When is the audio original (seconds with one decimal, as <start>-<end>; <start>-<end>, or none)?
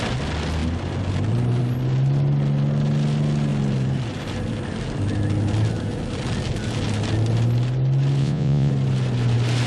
0.0-8.2; 8.7-9.7